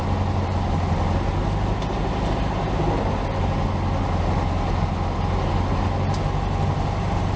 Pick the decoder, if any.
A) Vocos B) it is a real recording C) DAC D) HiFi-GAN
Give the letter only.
B